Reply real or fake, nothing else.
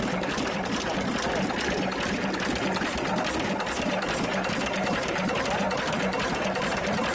fake